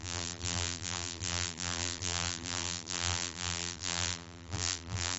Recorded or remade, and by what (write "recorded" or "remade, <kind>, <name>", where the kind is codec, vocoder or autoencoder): remade, vocoder, BigVGAN v2